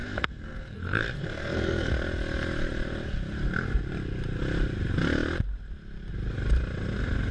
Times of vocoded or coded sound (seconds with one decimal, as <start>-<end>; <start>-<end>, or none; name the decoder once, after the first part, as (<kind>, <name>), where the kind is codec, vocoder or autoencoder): 0.0-1.9 (codec, SNAC)